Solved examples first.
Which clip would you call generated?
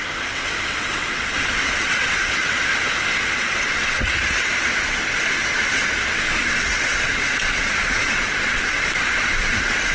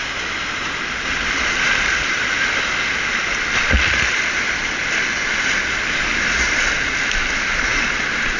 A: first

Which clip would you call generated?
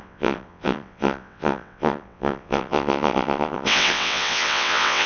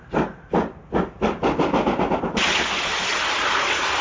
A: first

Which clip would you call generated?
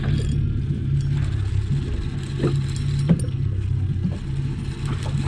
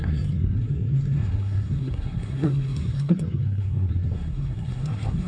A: second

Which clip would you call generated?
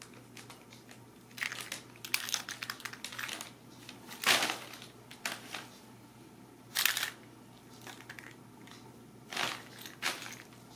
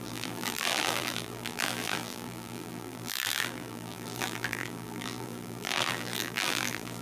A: second